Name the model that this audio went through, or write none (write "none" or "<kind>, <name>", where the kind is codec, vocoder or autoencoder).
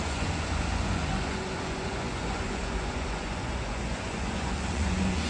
vocoder, Vocos